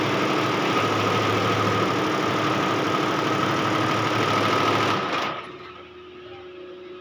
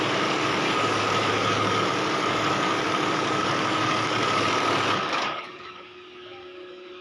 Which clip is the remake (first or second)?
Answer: second